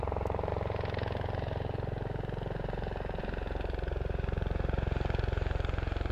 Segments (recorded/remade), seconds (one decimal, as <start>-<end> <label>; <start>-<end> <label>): 0.0-6.1 recorded